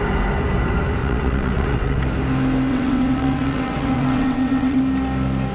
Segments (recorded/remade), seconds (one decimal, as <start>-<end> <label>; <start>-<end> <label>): 0.0-1.0 recorded; 1.0-2.0 remade; 2.0-2.7 recorded; 2.7-4.8 remade; 4.8-5.5 recorded